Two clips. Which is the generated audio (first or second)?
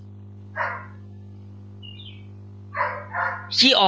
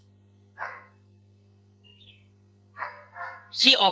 second